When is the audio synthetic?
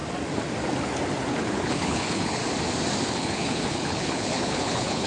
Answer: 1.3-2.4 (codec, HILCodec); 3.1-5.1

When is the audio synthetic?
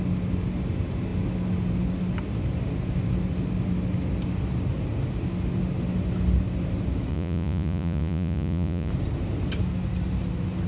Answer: 7.1-8.9 (vocoder, Vocos)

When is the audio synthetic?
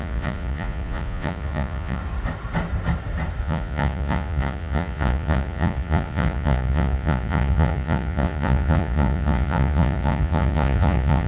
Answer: 0.0-2.0 (vocoder, Vocos); 3.4-11.3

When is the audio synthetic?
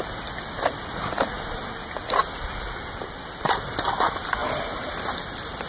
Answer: none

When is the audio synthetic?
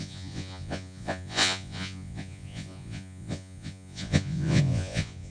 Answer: 0.0-5.3 (vocoder, Vocos)